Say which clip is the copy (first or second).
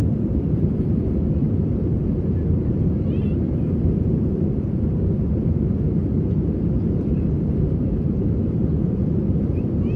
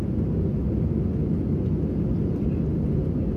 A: first